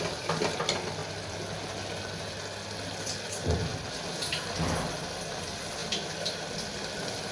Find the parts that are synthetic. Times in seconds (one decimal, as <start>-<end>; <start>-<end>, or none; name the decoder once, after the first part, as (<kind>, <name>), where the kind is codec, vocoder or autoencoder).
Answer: none

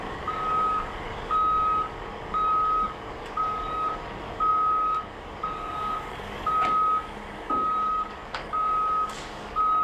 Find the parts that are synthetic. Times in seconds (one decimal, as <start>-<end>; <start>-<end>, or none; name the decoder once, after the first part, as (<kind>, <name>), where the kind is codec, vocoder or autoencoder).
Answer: 0.0-9.8 (codec, DAC)

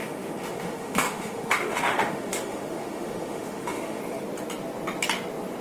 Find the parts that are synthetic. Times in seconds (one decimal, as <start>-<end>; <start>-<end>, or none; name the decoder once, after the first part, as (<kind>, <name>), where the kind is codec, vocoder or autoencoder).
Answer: 0.0-4.0 (autoencoder, DAC-VAE)